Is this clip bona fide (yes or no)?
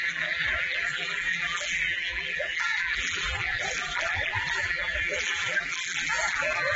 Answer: no